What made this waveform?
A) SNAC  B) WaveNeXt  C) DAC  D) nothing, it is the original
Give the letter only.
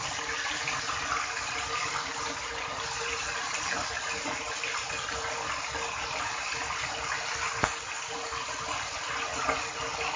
D